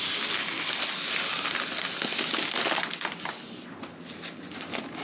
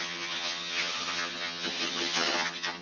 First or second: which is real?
first